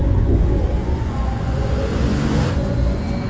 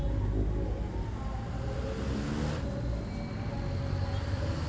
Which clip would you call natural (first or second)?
second